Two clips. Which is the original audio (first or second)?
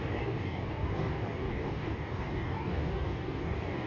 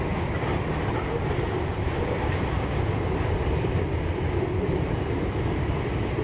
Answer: second